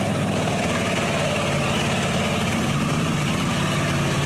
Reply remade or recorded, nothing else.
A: remade